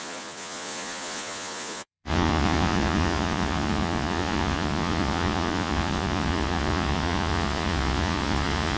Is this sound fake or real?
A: fake